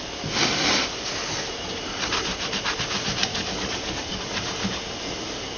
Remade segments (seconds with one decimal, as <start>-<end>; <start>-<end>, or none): 3.3-4.2